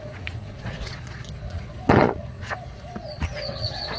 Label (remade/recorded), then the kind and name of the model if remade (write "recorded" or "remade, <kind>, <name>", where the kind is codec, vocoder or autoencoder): remade, vocoder, Vocos